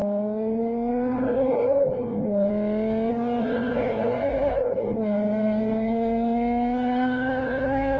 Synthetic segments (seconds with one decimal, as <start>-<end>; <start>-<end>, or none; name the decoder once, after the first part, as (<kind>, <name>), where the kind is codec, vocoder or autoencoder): 0.0-2.5 (codec, SNAC); 3.1-8.0